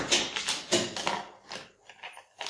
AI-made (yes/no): no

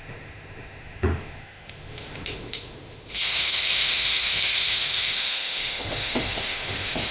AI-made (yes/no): yes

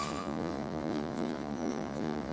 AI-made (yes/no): yes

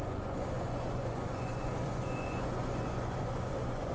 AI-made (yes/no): yes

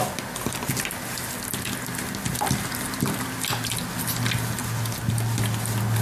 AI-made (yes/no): no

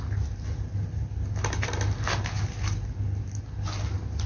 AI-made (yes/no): no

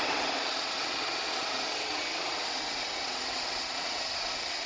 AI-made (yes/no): yes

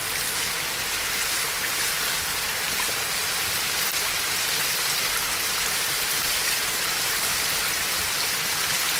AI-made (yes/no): no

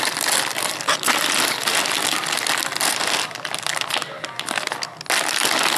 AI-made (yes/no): no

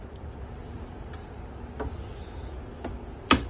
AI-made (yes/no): no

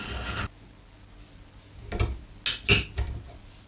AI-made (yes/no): no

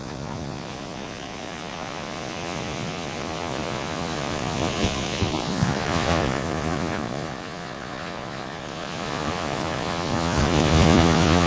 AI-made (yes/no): yes